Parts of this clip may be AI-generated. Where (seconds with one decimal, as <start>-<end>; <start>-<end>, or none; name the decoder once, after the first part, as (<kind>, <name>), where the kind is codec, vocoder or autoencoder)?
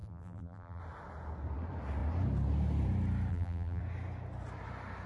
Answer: 0.0-0.8 (vocoder, BigVGAN v2); 3.3-3.8